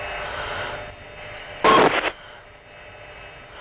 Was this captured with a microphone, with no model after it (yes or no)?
yes